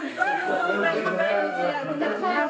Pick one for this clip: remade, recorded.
remade